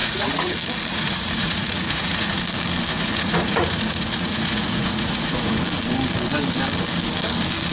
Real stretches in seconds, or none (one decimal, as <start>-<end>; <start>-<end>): 0.5-0.9; 2.4-2.9; 5.6-7.7